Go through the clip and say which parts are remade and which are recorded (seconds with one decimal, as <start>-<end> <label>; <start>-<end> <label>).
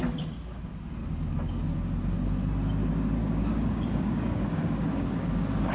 0.0-3.2 recorded; 3.2-5.7 remade